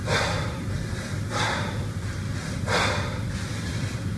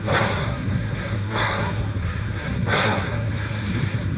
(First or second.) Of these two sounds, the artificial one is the second